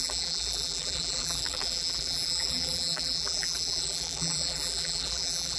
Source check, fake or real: fake